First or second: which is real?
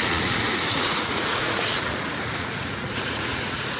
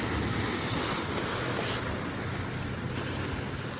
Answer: second